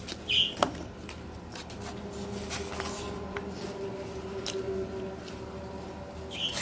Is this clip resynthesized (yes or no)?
no